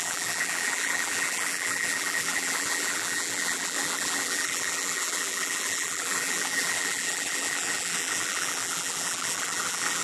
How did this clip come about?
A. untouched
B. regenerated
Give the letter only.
B